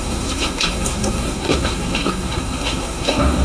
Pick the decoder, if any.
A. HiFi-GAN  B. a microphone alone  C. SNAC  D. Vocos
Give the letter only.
C